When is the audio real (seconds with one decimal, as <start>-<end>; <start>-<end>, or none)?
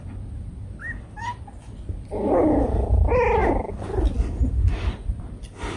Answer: 0.0-1.3; 2.9-5.8